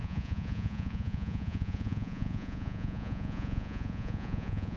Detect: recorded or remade remade